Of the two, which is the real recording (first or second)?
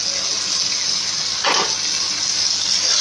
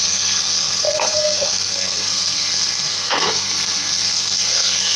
first